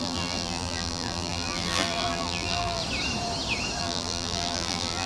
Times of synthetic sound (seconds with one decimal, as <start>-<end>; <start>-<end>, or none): 0.0-2.8; 3.8-5.1